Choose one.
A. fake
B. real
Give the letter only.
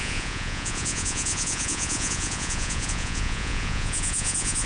A